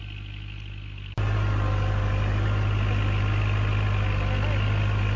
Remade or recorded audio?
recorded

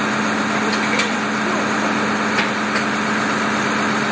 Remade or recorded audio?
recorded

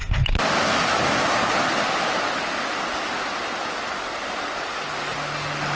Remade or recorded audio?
recorded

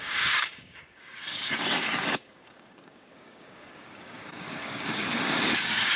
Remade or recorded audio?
remade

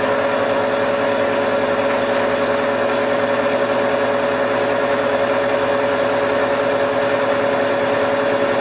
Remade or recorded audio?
recorded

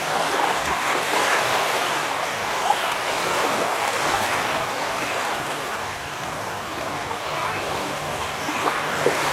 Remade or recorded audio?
remade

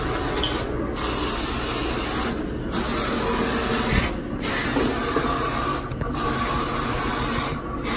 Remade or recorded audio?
recorded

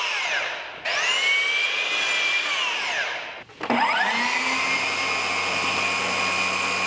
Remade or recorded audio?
recorded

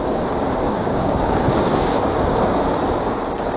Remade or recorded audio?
remade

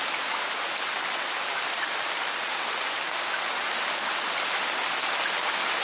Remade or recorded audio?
recorded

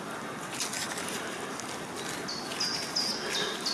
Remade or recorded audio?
recorded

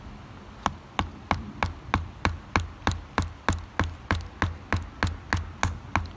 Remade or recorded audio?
recorded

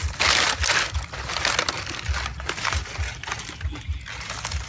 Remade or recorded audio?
recorded